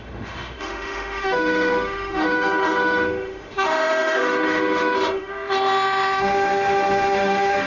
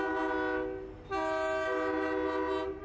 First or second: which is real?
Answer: second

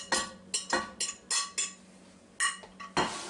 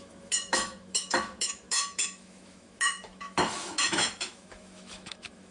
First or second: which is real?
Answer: first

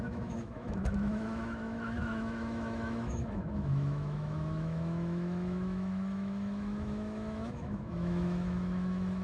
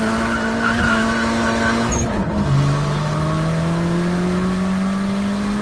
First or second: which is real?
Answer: second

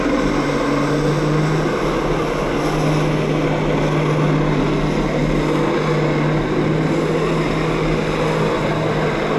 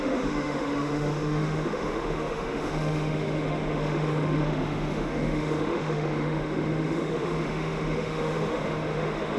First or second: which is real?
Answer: first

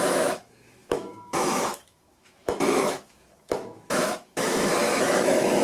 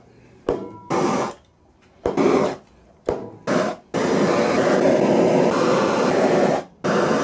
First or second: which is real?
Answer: second